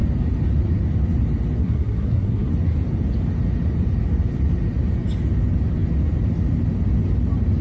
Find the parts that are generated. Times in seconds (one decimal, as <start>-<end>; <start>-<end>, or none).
1.6-2.5